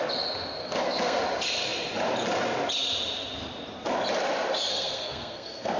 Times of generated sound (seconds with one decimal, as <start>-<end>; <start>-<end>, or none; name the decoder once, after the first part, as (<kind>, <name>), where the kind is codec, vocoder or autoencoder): 0.6-1.2 (codec, SNAC); 4.7-5.8